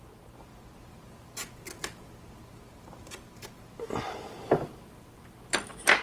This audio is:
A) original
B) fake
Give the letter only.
A